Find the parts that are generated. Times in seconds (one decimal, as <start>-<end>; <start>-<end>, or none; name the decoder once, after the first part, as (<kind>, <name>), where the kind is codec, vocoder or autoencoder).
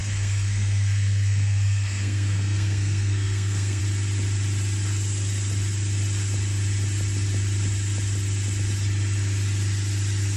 0.0-3.8 (codec, SNAC)